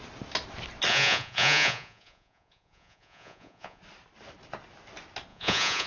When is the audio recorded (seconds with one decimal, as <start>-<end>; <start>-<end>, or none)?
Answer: 0.0-0.9; 3.8-5.3